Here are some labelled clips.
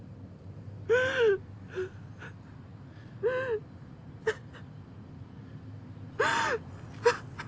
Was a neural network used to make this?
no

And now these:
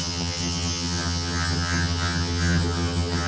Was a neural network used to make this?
yes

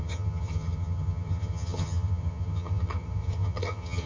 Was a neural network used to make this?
yes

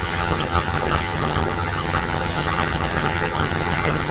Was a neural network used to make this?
yes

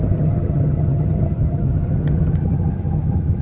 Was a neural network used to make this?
yes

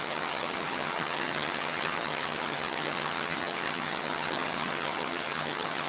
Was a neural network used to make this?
yes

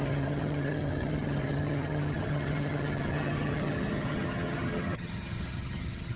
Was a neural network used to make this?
yes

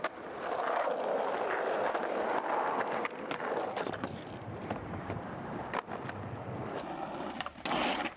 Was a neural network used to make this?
no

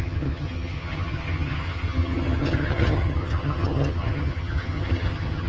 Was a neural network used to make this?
yes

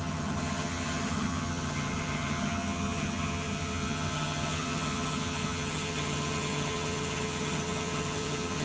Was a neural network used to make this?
yes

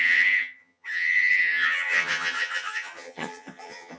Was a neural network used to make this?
yes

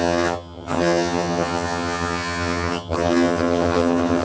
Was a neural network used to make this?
yes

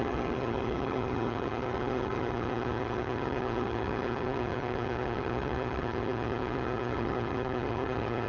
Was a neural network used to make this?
yes